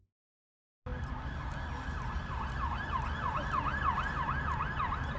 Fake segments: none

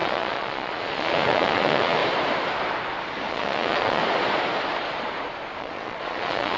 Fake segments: 0.0-2.0; 3.3-4.0; 5.6-6.6